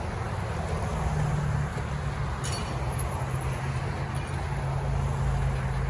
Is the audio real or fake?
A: real